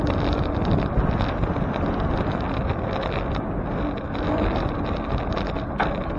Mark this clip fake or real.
real